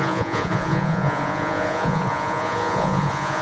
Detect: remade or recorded remade